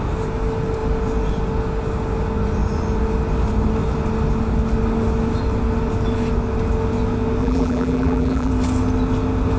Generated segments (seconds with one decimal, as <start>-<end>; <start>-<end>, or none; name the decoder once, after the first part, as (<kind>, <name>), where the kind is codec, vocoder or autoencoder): 7.4-8.5 (vocoder, BigVGAN v2)